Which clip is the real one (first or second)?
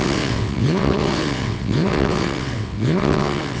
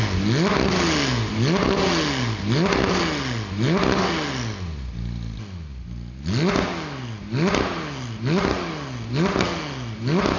second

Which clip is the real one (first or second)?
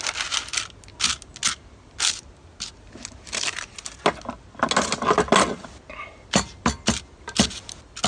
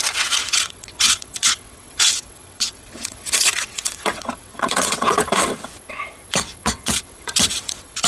first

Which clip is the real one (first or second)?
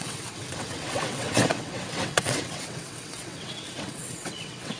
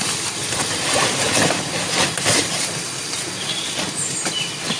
second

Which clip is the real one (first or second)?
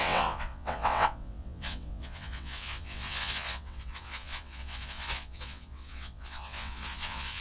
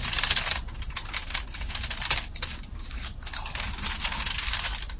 second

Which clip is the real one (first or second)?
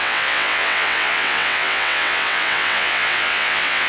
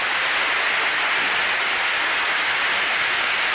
second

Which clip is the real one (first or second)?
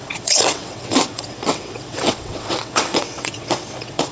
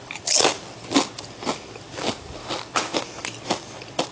second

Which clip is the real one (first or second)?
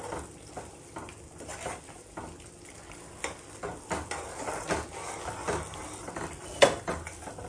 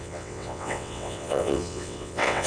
first